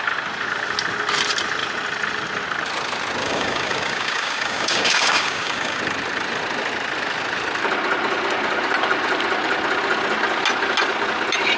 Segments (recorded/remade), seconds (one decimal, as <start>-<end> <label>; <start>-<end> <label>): 0.0-3.2 recorded; 3.2-5.8 remade; 5.8-11.6 recorded